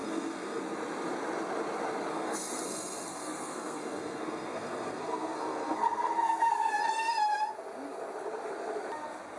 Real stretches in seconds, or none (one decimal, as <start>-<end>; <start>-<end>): 0.6-2.1; 6.7-9.4